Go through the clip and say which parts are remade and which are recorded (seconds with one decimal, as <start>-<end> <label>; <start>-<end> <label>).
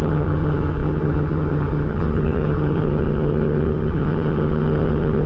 0.0-5.3 remade